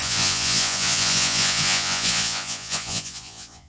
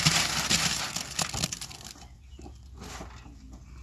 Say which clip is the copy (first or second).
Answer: first